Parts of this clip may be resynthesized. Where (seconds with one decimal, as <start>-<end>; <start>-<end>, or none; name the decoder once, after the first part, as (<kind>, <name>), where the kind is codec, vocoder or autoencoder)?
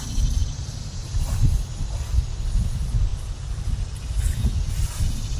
3.1-4.1 (vocoder, BigVGAN v2)